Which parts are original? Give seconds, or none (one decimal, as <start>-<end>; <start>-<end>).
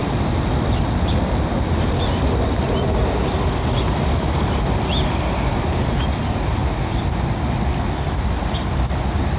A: 0.0-9.4